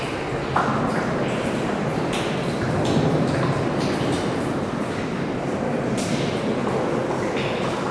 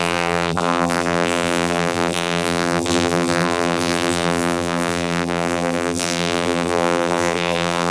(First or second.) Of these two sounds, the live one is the first